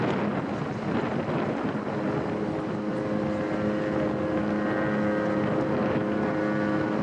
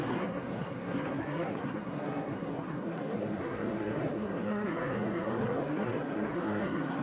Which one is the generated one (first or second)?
second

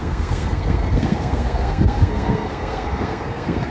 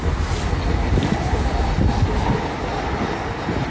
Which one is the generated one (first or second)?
first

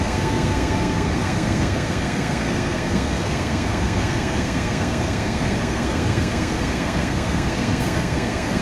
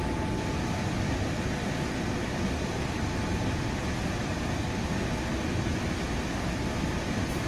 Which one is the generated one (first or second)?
first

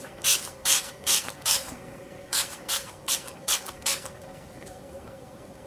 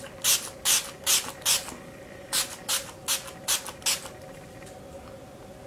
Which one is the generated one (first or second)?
first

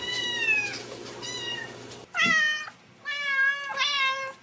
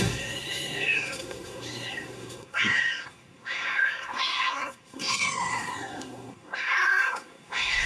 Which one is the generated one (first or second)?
second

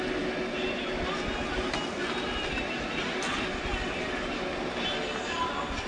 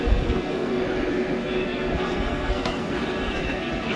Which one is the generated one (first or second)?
second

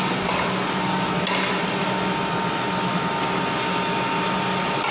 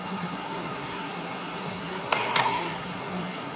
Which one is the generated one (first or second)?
second